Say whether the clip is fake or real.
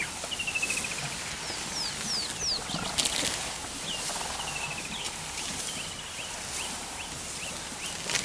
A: real